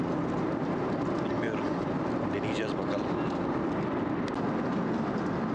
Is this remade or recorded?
recorded